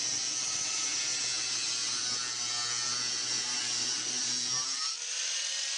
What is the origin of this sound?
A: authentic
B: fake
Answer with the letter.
A